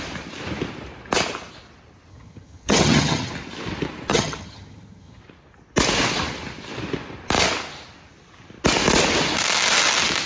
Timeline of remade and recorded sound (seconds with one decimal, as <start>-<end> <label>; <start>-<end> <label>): 0.0-2.1 recorded; 2.1-3.3 remade; 3.3-4.1 recorded; 4.1-5.2 remade; 5.2-10.3 recorded